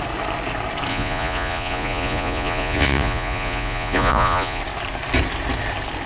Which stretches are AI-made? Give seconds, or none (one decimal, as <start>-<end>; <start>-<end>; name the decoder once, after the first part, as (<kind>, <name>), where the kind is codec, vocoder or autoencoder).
0.9-4.6 (vocoder, Vocos)